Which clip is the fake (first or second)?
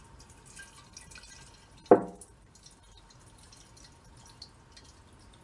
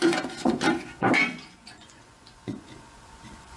second